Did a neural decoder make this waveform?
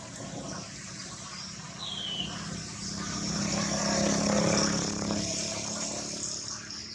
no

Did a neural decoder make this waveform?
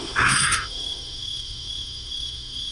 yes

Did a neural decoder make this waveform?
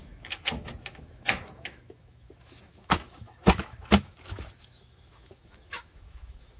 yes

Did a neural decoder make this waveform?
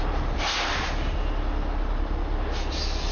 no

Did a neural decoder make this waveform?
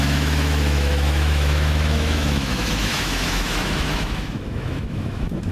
yes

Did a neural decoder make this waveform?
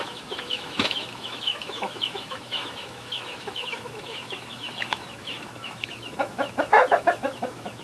yes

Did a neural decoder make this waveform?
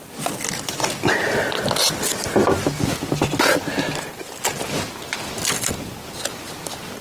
no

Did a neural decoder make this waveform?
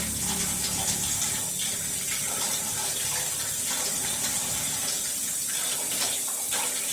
no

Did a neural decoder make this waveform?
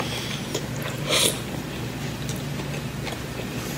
no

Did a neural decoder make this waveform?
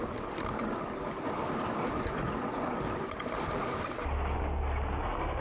no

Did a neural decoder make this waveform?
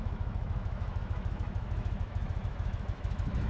yes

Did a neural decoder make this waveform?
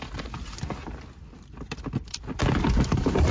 no